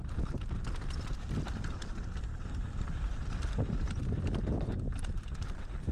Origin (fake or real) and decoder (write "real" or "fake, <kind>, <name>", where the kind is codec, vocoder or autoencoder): fake, vocoder, BigVGAN v2